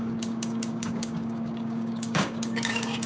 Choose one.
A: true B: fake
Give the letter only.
B